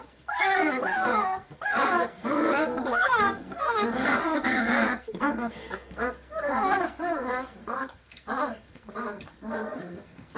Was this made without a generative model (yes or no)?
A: no